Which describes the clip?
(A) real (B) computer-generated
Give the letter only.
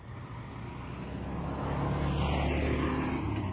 A